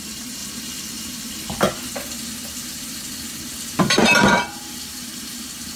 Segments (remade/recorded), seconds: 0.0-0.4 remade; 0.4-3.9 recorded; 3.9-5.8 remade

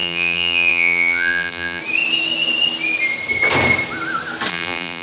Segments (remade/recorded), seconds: 0.0-1.8 remade; 1.8-4.5 recorded; 4.5-5.0 remade

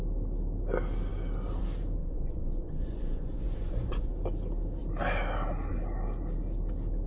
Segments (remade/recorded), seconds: 0.0-2.0 recorded; 2.0-4.1 remade; 4.1-7.1 recorded

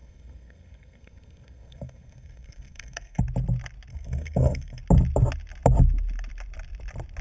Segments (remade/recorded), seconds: 0.0-3.2 remade; 3.2-3.9 recorded; 3.9-4.8 remade; 4.8-7.2 recorded

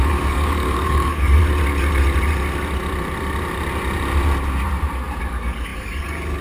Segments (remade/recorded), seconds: 0.0-1.4 remade; 1.4-5.2 recorded; 5.2-6.4 remade

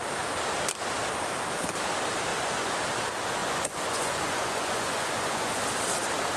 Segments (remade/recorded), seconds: 0.0-2.3 recorded; 2.3-2.8 remade; 2.8-3.4 recorded; 3.4-5.6 remade; 5.6-6.4 recorded